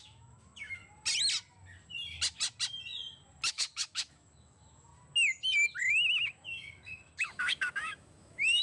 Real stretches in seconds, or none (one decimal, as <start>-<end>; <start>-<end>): 0.8-3.5; 4.9-5.8